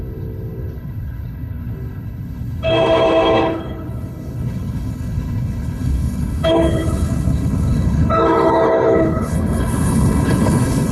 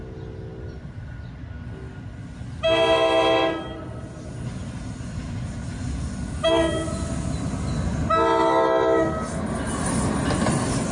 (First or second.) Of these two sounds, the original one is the second